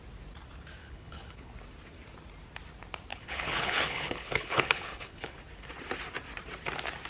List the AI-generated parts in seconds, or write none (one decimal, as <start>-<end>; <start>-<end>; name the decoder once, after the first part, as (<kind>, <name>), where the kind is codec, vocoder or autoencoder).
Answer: 0.8-1.5 (codec, HILCodec); 3.1-5.4